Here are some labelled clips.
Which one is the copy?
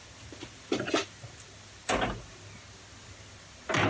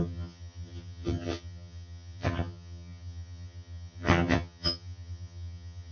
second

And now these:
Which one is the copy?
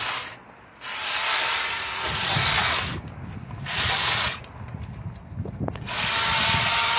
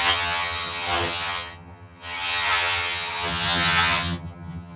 second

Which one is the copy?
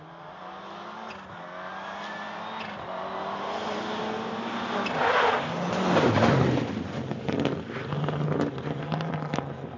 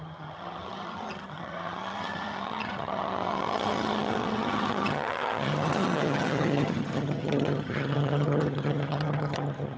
second